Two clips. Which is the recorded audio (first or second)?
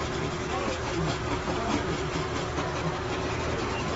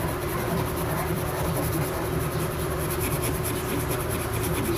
first